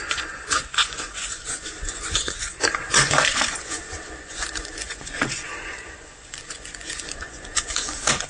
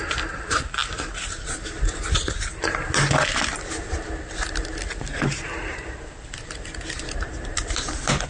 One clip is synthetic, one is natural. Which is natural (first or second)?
second